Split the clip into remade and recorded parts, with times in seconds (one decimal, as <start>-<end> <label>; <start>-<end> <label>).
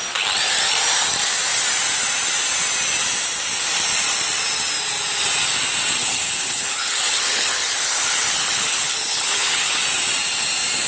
0.0-6.0 recorded; 6.0-9.8 remade; 9.8-10.9 recorded